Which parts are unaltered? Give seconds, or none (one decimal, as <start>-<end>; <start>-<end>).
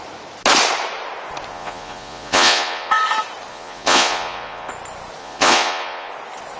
0.0-1.5; 2.9-3.5; 4.7-5.2; 6.1-6.6